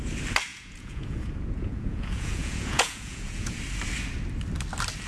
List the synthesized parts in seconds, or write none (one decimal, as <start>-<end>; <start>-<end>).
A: 0.5-3.6